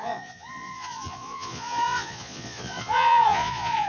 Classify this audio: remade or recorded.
remade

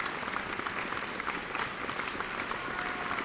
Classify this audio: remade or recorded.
recorded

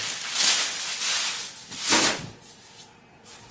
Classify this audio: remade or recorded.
recorded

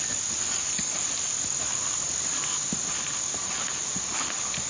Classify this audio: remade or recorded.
recorded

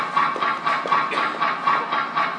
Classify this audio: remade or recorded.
recorded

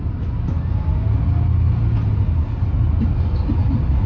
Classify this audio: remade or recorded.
recorded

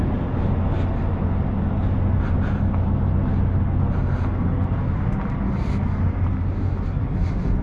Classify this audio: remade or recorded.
recorded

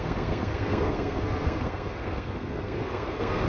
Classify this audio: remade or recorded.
remade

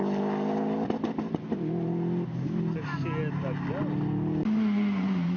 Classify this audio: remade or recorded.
recorded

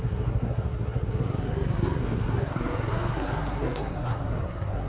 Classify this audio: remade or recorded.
remade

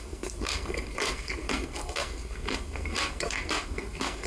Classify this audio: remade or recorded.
remade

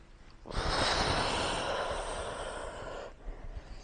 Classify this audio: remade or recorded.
recorded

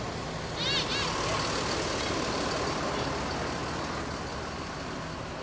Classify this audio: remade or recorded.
recorded